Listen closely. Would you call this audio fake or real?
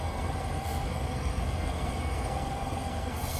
fake